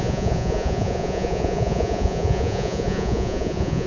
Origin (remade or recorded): remade